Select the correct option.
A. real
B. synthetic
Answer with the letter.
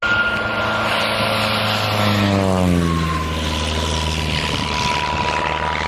A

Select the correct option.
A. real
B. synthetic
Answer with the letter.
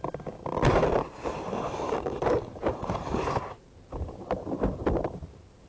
A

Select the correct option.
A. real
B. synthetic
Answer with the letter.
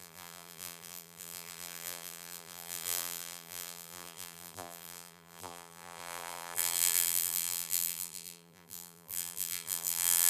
B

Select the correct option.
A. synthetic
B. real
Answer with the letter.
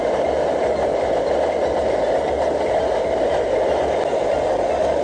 B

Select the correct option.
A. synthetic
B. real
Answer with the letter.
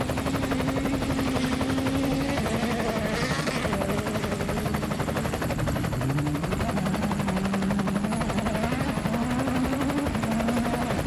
B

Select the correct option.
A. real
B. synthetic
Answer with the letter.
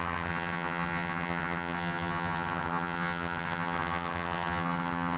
B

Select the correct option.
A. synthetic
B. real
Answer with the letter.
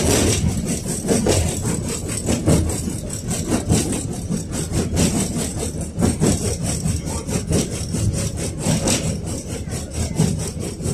B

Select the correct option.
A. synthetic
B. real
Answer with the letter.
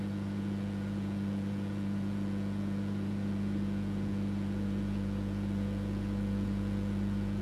A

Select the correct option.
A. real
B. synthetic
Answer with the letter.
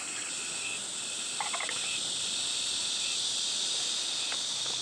A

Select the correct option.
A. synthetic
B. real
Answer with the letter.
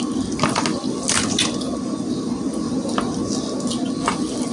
B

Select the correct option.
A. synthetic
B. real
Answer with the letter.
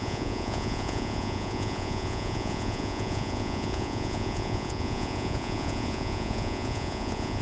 A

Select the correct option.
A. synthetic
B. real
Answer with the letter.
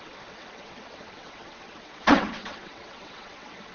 A